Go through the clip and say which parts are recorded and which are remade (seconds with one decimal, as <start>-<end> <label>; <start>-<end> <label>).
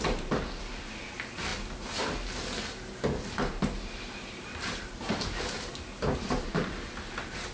0.0-7.5 recorded